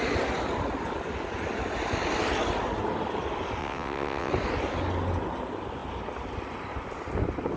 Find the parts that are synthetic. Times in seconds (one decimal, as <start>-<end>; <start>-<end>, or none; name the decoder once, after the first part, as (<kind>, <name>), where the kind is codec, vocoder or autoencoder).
3.6-4.3 (vocoder, WaveNeXt)